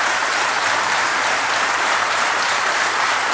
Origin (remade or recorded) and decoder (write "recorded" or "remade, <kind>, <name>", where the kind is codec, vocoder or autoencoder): remade, vocoder, BigVGAN v2